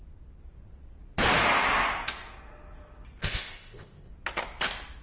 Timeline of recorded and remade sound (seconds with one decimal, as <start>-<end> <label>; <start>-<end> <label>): 0.0-3.2 recorded; 3.2-4.1 remade; 4.1-5.0 recorded